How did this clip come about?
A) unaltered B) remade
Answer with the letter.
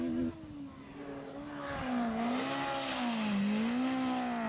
A